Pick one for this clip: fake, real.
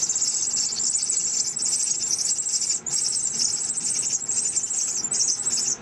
real